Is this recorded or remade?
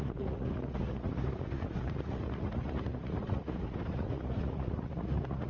remade